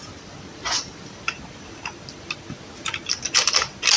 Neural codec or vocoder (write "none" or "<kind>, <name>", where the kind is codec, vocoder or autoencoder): none